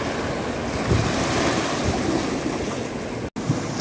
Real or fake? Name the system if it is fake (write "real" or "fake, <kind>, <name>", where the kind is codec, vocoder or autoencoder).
real